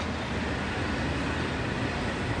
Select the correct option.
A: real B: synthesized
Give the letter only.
A